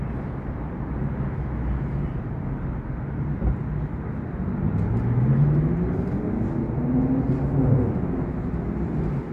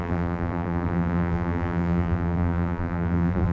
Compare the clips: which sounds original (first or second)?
first